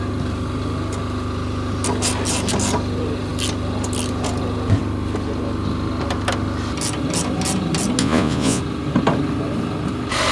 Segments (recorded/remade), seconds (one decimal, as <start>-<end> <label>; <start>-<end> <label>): 0.0-8.0 recorded; 8.0-8.6 remade; 8.6-10.3 recorded